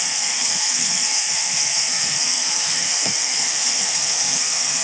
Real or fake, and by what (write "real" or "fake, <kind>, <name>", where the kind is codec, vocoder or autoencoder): fake, codec, SNAC